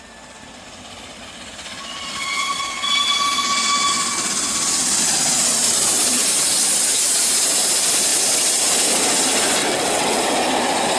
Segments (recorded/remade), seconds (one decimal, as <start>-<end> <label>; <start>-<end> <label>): 0.0-9.6 recorded; 9.6-10.2 remade; 10.2-11.0 recorded